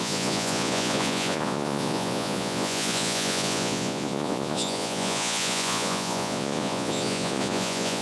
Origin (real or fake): fake